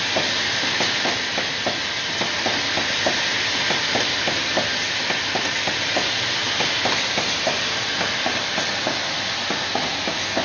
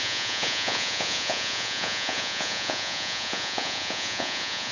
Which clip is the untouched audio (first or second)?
first